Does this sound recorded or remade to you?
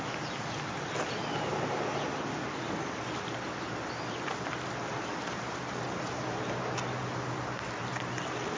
recorded